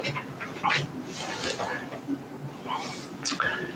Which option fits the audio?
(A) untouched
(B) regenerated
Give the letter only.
A